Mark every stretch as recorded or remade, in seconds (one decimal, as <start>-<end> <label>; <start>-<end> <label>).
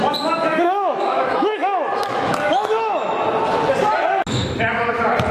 0.0-0.5 recorded; 0.5-3.2 remade; 3.2-5.3 recorded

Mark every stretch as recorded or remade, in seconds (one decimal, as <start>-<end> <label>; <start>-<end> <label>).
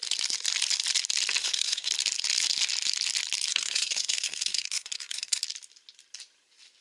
0.0-1.4 recorded; 1.4-1.9 remade; 1.9-3.5 recorded; 3.5-5.4 remade; 5.4-6.8 recorded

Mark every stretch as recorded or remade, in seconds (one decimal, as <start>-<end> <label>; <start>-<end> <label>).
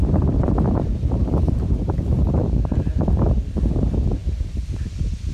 0.0-3.2 remade; 3.2-5.3 recorded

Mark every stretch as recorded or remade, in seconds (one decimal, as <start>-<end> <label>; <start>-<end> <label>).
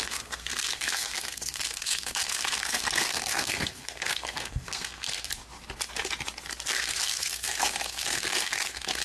0.0-5.3 remade; 5.3-6.7 recorded; 6.7-9.0 remade